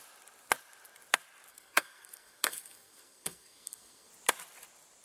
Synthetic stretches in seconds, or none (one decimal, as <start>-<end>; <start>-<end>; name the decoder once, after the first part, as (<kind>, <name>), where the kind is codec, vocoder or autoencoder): 1.5-4.1 (codec, SNAC)